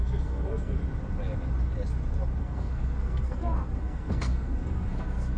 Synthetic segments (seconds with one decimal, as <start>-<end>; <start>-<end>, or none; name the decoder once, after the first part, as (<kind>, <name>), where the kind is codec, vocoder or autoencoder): 0.0-0.8 (codec, SNAC); 2.4-5.4